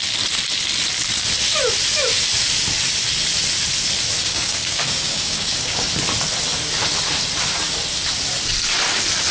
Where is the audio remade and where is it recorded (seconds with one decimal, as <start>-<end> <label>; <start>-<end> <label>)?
0.0-4.2 recorded; 4.2-5.9 remade; 5.9-9.3 recorded